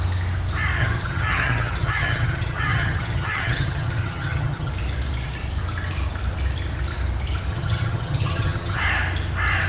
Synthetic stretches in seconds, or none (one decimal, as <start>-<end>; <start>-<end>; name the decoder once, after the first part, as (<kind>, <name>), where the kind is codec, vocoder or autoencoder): 0.8-4.7 (vocoder, HiFi-GAN); 7.5-8.8